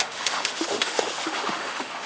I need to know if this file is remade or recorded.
remade